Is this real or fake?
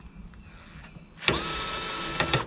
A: real